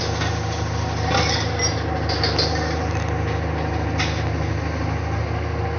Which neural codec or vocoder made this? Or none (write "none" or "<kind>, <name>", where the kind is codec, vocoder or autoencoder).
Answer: none